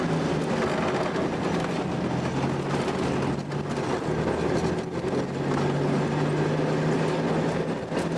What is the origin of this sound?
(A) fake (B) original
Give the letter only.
B